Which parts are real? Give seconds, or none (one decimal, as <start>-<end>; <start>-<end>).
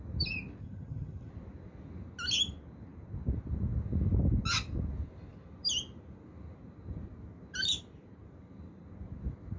0.0-0.6; 1.3-9.6